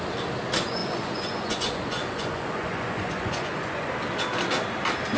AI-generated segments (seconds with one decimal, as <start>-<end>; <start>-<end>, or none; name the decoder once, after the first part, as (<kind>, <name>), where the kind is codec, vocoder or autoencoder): 0.8-3.9 (vocoder, Vocos)